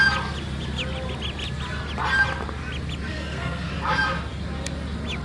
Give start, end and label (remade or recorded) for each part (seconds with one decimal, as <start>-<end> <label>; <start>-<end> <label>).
0.0-3.1 recorded; 3.1-3.7 remade; 3.7-5.2 recorded